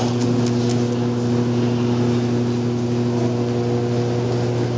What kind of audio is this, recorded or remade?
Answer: recorded